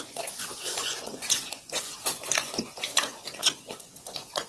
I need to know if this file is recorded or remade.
remade